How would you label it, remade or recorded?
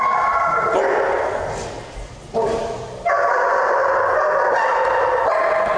recorded